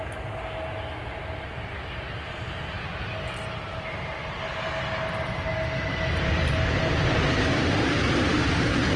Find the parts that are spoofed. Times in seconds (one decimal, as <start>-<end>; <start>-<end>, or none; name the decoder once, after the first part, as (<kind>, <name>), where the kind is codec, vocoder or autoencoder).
none